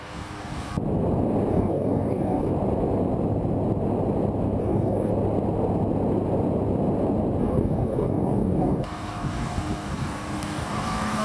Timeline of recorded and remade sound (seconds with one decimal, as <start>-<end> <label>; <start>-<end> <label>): 0.0-0.7 remade; 0.7-1.5 recorded; 1.5-2.5 remade; 2.5-4.6 recorded; 4.6-5.1 remade; 5.1-7.4 recorded; 7.4-11.2 remade